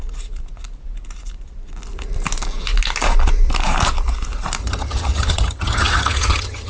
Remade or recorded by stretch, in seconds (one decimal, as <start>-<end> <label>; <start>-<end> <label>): 0.0-4.6 recorded; 4.6-6.7 remade